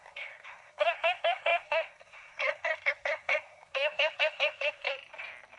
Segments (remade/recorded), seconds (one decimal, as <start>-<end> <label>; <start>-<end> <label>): 0.0-4.9 remade; 4.9-5.6 recorded